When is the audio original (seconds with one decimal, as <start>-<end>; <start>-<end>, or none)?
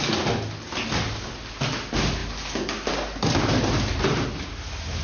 0.0-5.0